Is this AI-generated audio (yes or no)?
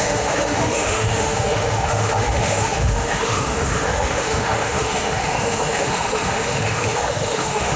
yes